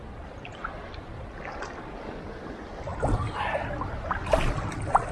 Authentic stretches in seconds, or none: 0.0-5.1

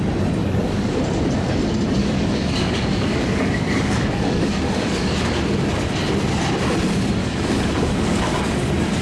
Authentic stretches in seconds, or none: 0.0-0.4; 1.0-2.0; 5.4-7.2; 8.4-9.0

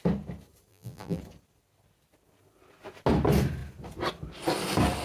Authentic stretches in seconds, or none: 0.0-0.7; 1.2-5.0

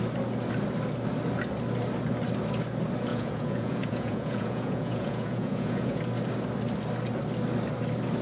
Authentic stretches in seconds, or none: 0.0-3.1; 6.0-8.2

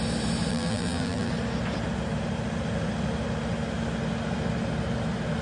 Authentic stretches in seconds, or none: 0.0-0.5; 1.3-5.4

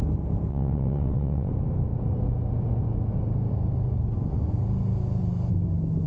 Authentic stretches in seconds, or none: 0.0-0.5; 1.5-6.1